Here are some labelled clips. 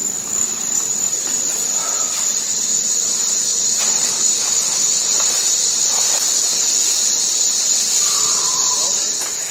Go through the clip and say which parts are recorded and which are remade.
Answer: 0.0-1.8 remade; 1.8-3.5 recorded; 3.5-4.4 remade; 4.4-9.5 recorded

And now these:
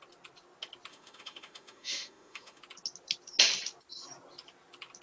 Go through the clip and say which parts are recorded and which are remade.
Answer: 0.0-0.9 recorded; 0.9-2.6 remade; 2.6-5.0 recorded

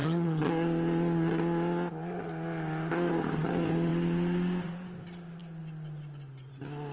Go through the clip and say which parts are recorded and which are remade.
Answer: 0.0-0.5 remade; 0.5-6.9 recorded

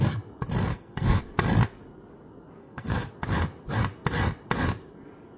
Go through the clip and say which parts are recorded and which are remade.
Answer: 0.0-0.7 recorded; 0.7-1.2 remade; 1.2-2.6 recorded; 2.6-3.1 remade; 3.1-5.4 recorded

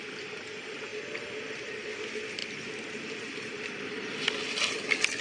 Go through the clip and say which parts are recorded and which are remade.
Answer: 0.0-0.9 recorded; 0.9-1.9 remade; 1.9-5.2 recorded

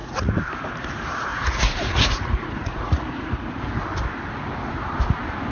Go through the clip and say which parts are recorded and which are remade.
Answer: 0.0-0.5 remade; 0.5-1.3 recorded; 1.3-3.6 remade; 3.6-5.5 recorded

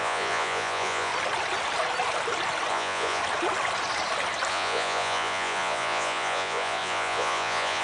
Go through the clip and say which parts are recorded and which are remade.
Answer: 0.0-1.1 remade; 1.1-2.7 recorded; 2.7-3.2 remade; 3.2-4.5 recorded; 4.5-7.8 remade